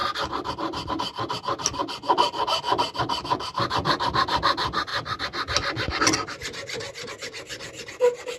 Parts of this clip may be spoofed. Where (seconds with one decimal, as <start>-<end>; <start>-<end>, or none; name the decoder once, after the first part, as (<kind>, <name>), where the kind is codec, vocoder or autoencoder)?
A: none